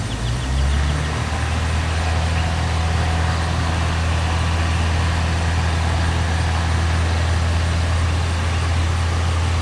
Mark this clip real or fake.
real